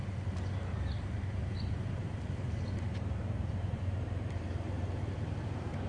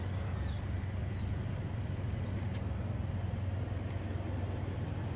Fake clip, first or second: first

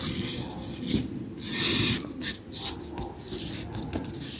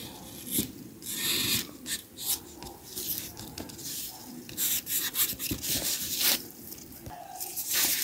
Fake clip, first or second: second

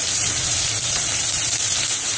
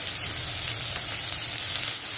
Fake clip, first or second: first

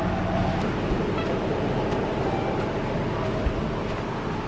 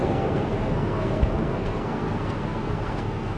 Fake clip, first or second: second